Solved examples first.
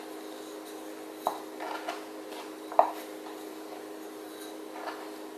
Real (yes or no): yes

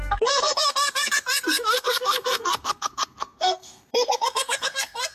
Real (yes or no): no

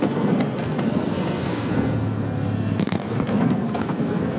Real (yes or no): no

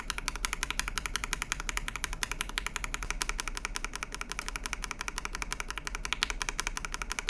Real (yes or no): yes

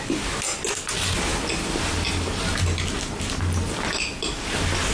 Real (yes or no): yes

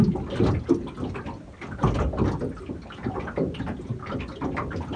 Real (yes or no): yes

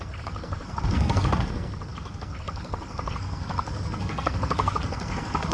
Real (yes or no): no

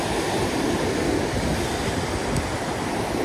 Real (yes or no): yes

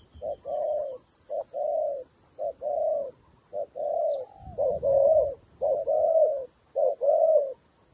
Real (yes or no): yes